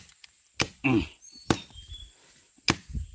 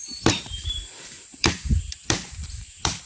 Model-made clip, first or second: second